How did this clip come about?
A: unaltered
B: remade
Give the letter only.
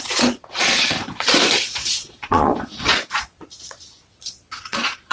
B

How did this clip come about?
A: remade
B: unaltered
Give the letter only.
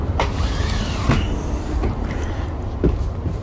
B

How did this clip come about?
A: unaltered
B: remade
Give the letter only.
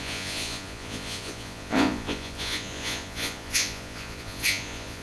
B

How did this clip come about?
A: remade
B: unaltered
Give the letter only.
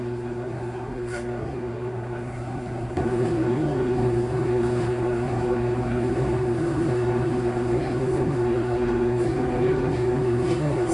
A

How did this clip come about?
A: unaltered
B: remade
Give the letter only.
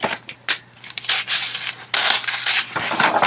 A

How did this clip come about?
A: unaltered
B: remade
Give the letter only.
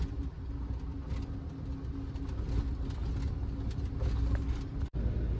A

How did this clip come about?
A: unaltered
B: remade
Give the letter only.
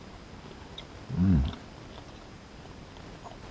A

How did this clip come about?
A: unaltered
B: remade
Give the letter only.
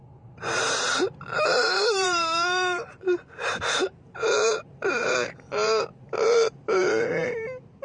B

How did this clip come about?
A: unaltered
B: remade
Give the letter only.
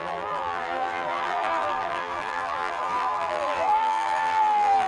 B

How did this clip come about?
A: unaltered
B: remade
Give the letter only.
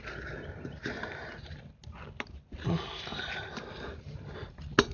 A